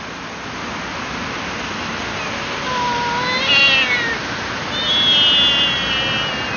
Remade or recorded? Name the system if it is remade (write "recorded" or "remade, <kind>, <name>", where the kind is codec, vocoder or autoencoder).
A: recorded